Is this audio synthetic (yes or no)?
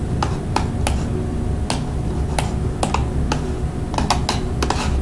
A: no